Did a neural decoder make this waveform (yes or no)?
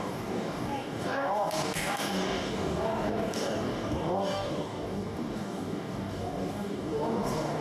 yes